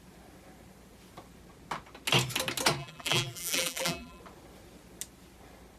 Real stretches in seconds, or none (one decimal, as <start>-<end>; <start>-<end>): 0.0-2.8; 4.2-5.8